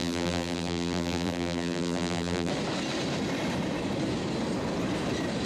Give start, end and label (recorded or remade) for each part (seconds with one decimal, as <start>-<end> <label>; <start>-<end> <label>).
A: 0.0-2.5 remade; 2.5-5.5 recorded